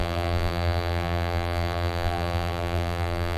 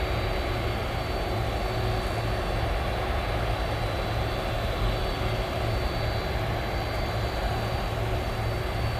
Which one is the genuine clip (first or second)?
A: second